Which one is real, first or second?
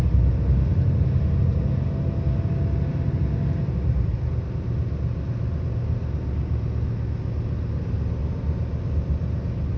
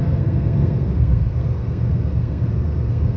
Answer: first